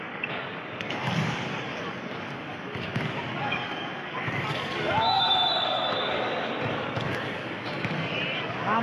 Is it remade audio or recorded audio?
remade